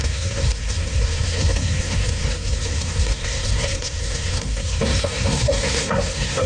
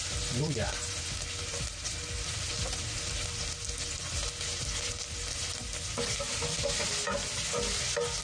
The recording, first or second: second